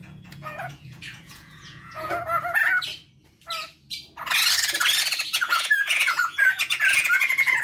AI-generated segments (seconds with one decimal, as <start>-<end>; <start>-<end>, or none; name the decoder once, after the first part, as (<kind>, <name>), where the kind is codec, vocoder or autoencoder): 0.0-2.1 (vocoder, Vocos); 5.3-7.6